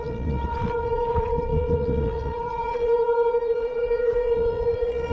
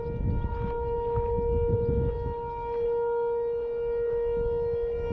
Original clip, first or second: second